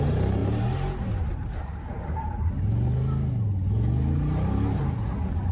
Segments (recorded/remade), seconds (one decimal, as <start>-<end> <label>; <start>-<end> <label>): 0.0-0.4 recorded; 0.4-2.5 remade; 2.5-5.5 recorded